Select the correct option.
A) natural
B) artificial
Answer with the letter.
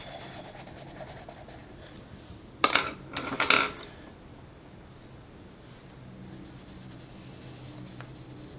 A